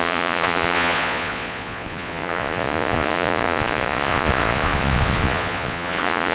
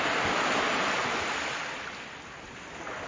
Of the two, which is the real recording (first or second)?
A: second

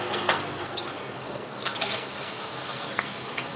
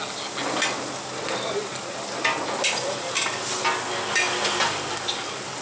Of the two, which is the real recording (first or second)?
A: second